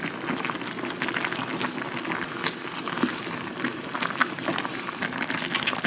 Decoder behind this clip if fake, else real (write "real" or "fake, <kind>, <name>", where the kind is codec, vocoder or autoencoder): real